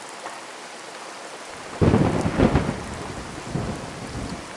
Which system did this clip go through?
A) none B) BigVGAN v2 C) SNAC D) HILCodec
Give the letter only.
A